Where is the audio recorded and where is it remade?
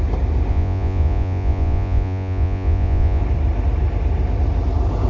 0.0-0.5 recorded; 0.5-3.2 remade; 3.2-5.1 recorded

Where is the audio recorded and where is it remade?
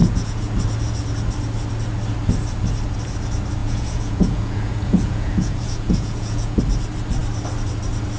0.0-0.5 remade; 0.5-3.6 recorded; 3.6-6.6 remade; 6.6-8.2 recorded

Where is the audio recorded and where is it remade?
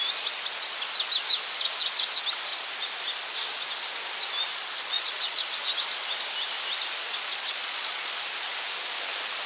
0.0-4.5 recorded; 4.5-5.5 remade; 5.5-7.0 recorded; 7.0-8.2 remade; 8.2-9.5 recorded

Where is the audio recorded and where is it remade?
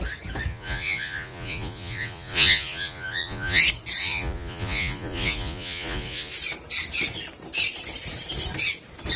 0.0-0.5 recorded; 0.5-3.6 remade; 3.6-4.0 recorded; 4.0-6.3 remade; 6.3-9.2 recorded